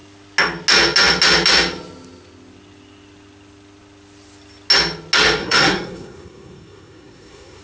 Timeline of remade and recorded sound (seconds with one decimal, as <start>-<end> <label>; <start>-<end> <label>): 0.0-5.4 recorded; 5.4-7.6 remade